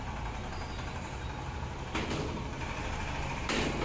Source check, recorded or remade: recorded